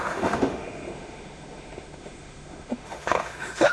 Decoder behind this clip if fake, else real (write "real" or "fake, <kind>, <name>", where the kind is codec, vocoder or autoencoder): fake, autoencoder, DAC-VAE